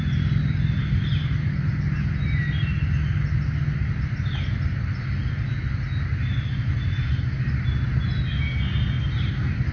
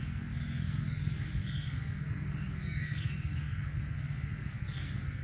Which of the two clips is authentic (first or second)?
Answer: first